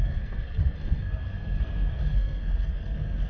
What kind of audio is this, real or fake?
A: fake